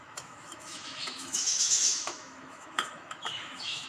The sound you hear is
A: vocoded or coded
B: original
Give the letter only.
A